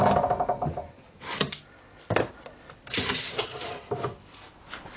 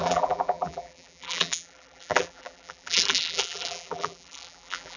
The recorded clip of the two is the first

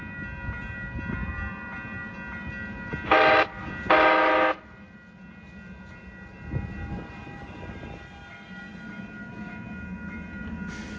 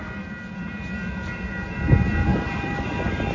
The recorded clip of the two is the first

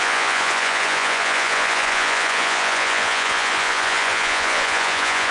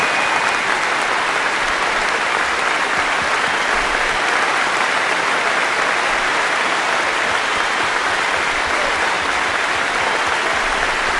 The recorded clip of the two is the second